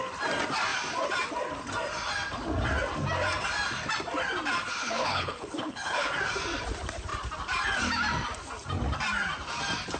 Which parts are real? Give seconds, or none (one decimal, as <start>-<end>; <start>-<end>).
0.0-4.8; 6.1-10.0